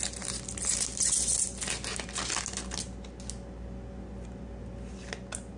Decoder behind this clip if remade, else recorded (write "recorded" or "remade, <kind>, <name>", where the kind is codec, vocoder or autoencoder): recorded